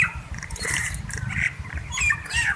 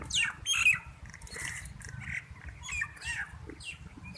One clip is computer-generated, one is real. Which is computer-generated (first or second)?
first